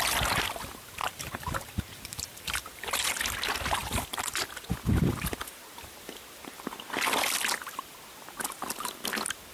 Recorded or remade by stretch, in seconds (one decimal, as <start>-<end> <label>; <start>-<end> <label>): 0.0-1.0 recorded; 1.0-3.1 remade; 3.1-9.5 recorded